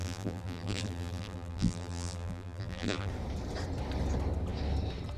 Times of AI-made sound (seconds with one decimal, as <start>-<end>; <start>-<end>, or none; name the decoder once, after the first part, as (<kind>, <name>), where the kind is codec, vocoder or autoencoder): 0.0-3.1 (vocoder, BigVGAN v2)